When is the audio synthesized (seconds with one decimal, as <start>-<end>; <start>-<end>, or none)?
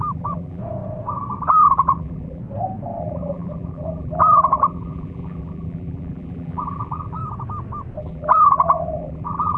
0.0-0.6; 1.4-2.4; 3.0-7.2; 8.0-9.6